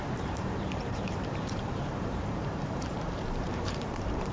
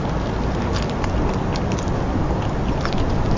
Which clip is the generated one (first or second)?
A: first